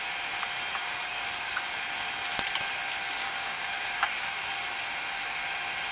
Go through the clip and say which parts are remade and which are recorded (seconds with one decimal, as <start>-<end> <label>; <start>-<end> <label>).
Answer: 0.0-0.8 recorded; 0.8-1.5 remade; 1.5-3.2 recorded; 3.2-4.7 remade; 4.7-5.9 recorded